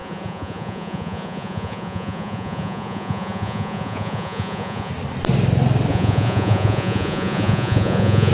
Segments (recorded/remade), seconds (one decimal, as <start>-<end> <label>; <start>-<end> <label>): 0.0-4.9 remade; 4.9-5.9 recorded; 5.9-8.3 remade